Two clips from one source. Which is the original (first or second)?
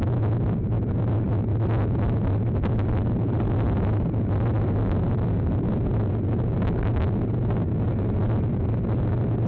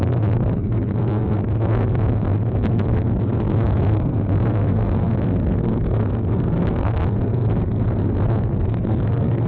first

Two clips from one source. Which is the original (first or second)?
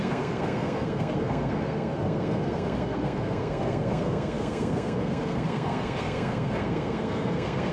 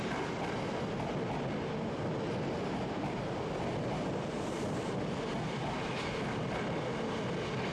second